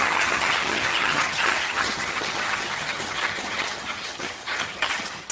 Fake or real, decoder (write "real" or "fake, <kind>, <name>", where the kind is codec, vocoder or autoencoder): fake, vocoder, HiFi-GAN